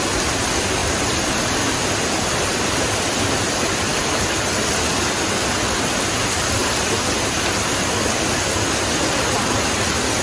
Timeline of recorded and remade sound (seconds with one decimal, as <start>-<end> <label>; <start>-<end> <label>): 0.0-10.2 recorded

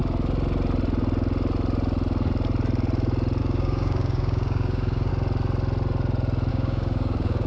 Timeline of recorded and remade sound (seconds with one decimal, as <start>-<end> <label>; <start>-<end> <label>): 0.0-3.4 recorded; 3.4-5.1 remade; 5.1-6.5 recorded; 6.5-7.5 remade

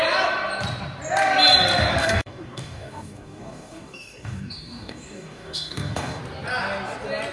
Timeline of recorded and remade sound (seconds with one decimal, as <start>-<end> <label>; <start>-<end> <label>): 0.0-2.0 recorded; 2.0-6.2 remade; 6.2-7.3 recorded

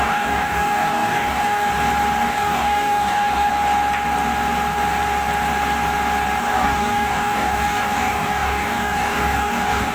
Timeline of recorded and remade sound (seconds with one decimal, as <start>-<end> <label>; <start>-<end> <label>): 0.0-1.7 remade; 1.7-2.2 recorded; 2.2-3.5 remade; 3.5-6.4 recorded; 6.4-9.9 remade

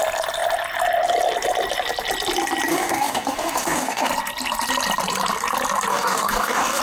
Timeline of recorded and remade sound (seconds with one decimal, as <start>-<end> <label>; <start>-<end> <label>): 0.0-2.7 recorded; 2.7-4.1 remade; 4.1-5.9 recorded; 5.9-6.8 remade

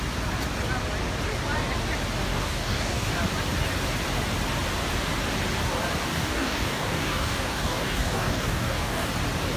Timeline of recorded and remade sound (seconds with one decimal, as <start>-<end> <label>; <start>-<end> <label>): 0.0-2.3 recorded; 2.3-3.1 remade; 3.1-6.0 recorded; 6.0-9.1 remade; 9.1-9.6 recorded

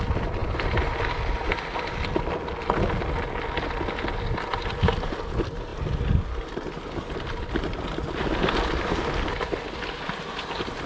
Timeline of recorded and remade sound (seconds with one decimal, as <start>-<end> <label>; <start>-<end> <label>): 0.0-10.9 recorded